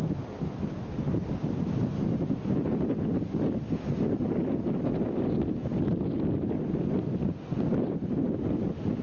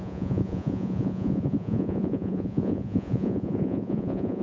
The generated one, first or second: second